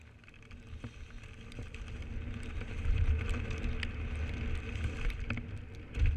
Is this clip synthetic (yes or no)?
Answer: no